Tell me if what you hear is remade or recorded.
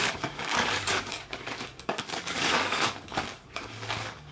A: remade